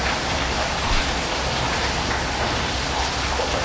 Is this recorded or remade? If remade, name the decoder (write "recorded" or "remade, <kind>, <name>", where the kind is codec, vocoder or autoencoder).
recorded